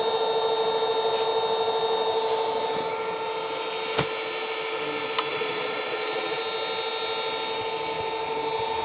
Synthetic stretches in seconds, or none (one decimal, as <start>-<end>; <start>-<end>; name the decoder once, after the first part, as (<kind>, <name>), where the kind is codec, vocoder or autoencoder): 5.3-6.4 (vocoder, Vocos)